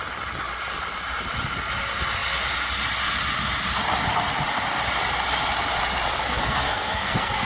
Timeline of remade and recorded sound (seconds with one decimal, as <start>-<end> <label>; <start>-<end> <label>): 0.0-6.2 recorded; 6.2-7.5 remade